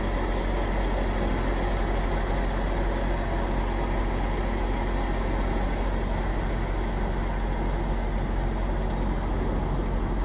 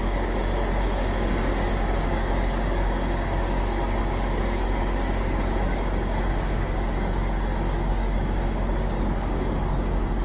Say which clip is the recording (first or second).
first